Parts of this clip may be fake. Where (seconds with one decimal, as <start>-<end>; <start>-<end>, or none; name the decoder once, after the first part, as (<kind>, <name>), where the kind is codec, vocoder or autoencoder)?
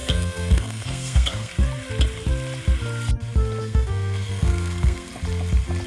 0.0-1.5 (codec, SNAC); 3.6-5.1